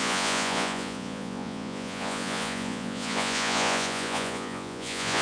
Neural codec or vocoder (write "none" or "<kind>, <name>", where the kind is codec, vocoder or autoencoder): vocoder, Vocos